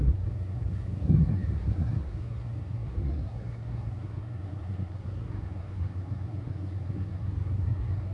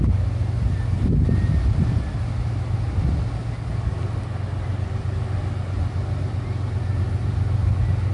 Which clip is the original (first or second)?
second